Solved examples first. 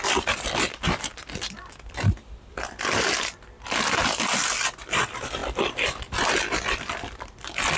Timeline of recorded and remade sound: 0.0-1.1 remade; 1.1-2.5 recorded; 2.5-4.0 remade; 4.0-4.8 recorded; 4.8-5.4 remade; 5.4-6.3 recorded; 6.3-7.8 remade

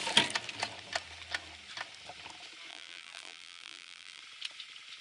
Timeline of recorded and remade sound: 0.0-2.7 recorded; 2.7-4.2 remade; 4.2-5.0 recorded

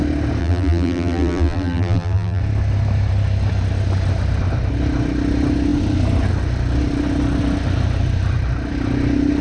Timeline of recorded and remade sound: 0.0-0.4 recorded; 0.4-2.4 remade; 2.4-9.4 recorded